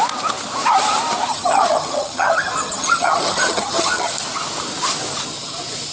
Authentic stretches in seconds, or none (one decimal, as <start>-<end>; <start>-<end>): 0.0-1.3; 4.1-5.9